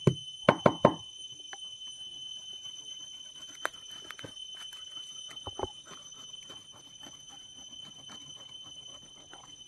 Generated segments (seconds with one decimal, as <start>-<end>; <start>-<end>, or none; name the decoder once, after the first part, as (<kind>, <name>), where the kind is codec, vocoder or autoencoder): none